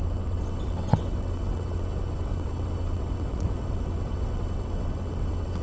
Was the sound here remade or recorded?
remade